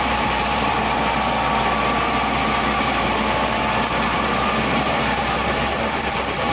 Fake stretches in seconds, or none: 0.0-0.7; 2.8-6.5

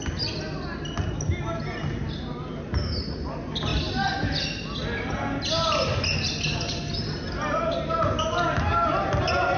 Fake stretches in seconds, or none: none

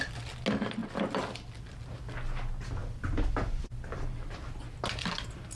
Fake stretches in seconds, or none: 2.8-4.3

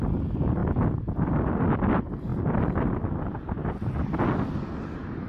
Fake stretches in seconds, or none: none